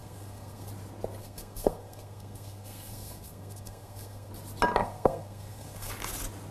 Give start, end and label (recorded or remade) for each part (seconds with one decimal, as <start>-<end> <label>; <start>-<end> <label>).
0.0-0.7 remade; 0.7-1.2 recorded; 1.2-4.3 remade; 4.3-4.8 recorded; 4.8-5.9 remade; 5.9-6.5 recorded